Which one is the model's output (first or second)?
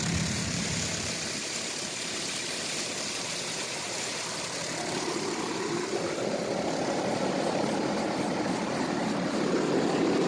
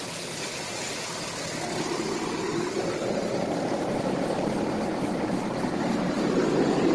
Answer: first